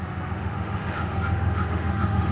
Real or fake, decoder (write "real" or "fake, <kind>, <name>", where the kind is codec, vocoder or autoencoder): fake, autoencoder, DAC-VAE